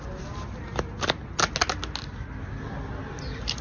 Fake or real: real